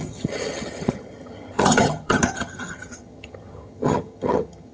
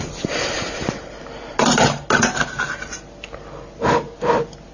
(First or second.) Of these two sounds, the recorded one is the second